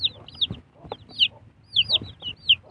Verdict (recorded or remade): recorded